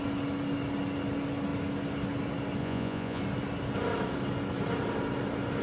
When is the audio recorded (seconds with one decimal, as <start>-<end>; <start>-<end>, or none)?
0.0-2.6; 3.2-5.6